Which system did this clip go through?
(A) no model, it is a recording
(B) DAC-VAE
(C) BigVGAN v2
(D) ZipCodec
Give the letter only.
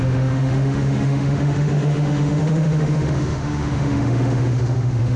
B